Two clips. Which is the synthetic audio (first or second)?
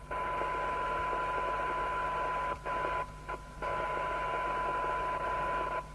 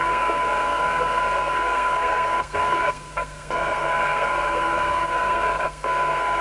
second